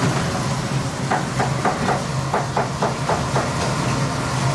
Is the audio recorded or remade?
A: recorded